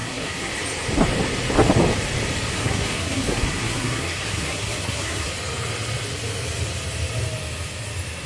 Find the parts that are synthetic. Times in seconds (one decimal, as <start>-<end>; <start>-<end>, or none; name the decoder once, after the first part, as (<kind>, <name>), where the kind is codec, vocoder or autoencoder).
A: 0.0-0.5 (codec, SNAC); 2.5-5.3